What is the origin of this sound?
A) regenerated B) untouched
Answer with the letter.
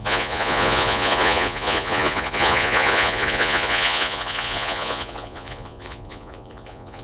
A